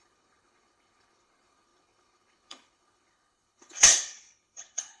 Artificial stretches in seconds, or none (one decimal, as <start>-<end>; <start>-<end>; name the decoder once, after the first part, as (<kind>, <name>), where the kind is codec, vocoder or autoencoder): 0.0-5.0 (codec, HILCodec)

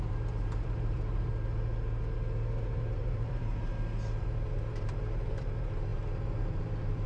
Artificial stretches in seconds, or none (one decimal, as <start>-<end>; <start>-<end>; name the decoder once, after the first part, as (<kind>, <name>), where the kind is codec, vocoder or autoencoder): 0.0-1.3 (vocoder, BigVGAN v2); 2.6-3.7; 4.2-7.1

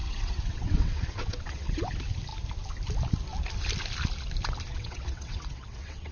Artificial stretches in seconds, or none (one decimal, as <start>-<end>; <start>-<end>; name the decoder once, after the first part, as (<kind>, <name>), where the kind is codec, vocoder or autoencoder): 0.0-1.9 (vocoder, WaveNeXt); 4.7-6.1